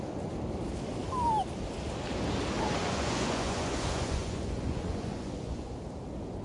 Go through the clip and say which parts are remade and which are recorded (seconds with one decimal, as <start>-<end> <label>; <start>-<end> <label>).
0.0-2.8 recorded; 2.8-5.7 remade; 5.7-6.4 recorded